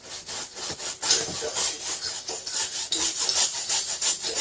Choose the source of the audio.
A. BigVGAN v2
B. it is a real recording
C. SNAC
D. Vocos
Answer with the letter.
B